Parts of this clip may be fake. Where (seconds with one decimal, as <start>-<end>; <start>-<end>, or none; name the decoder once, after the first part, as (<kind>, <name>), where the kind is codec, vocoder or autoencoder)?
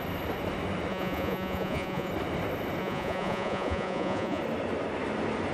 0.9-2.1 (vocoder, Vocos); 2.8-4.4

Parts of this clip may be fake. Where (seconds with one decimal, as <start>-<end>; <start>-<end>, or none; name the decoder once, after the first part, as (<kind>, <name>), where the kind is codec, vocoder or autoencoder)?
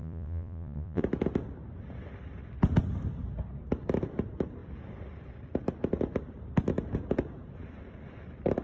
0.0-1.0 (vocoder, Vocos)